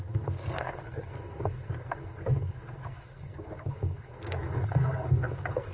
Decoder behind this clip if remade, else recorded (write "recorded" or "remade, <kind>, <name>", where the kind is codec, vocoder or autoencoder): remade, codec, SNAC